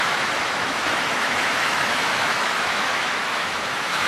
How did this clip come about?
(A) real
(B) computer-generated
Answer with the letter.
B